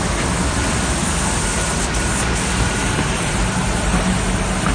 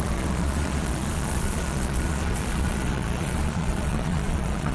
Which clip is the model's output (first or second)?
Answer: second